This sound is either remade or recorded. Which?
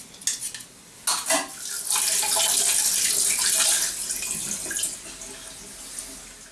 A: recorded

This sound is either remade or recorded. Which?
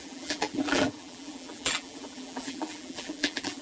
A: remade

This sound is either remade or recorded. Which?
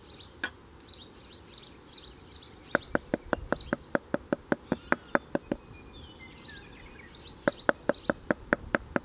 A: recorded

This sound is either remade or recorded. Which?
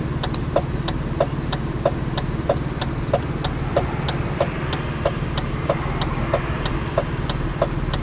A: recorded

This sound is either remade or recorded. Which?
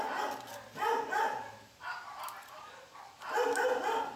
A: recorded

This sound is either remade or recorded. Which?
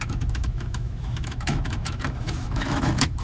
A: remade